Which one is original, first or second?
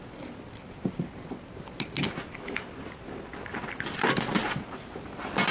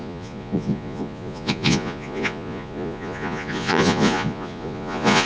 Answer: first